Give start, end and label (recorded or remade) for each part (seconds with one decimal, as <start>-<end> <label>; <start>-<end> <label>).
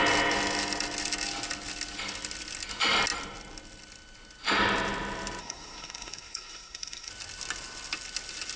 0.0-5.4 recorded; 5.4-7.1 remade; 7.1-8.6 recorded